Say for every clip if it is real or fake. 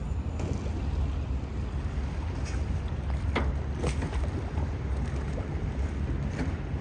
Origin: real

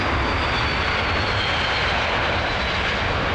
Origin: real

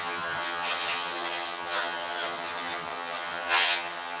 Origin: fake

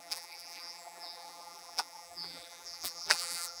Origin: fake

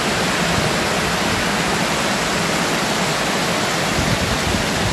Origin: real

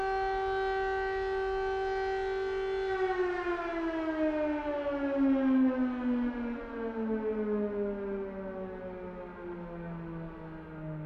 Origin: real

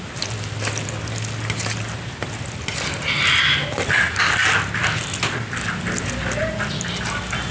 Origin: real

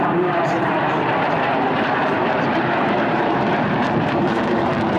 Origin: fake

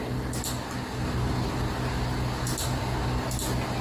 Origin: real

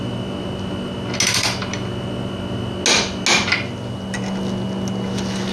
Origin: real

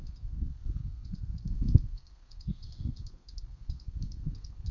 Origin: fake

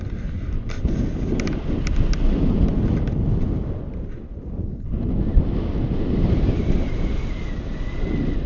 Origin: real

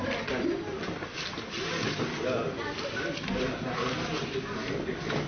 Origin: real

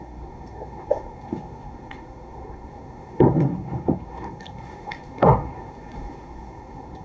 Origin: fake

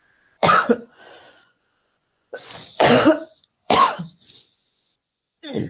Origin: fake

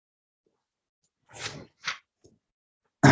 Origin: real